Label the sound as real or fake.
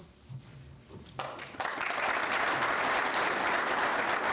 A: real